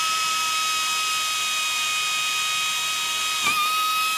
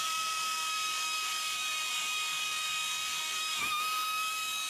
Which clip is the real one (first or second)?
first